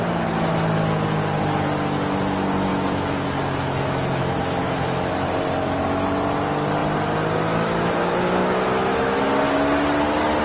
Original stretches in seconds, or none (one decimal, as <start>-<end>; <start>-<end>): 0.0-2.7; 5.1-8.4; 9.2-10.4